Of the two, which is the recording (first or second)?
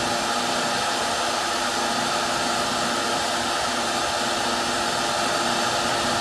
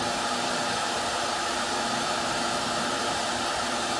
first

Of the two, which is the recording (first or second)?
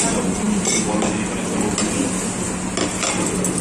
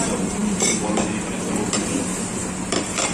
first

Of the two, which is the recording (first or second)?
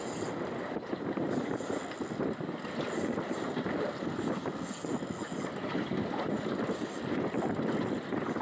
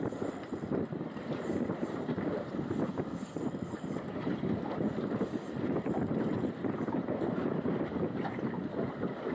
first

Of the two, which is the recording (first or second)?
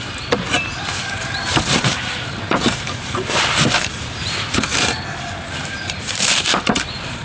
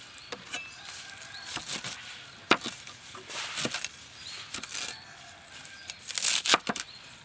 second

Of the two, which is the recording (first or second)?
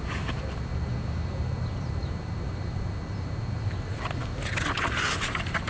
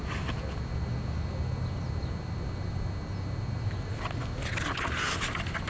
second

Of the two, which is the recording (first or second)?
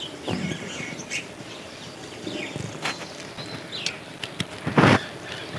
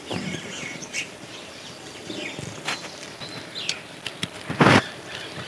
first